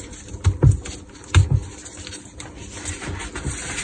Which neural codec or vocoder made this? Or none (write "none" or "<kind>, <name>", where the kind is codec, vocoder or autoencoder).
none